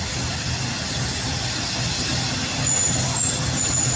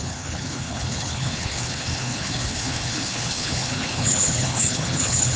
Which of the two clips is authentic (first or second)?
first